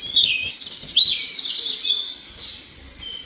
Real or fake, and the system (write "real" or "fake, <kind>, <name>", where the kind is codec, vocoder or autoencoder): real